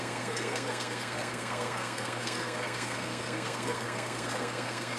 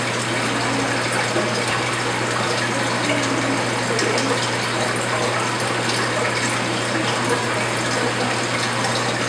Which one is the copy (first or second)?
first